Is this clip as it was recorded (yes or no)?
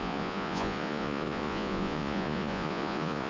no